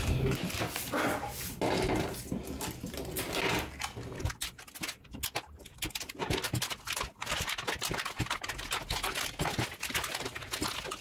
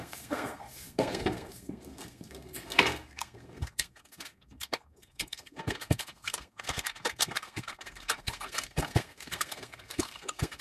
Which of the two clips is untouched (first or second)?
first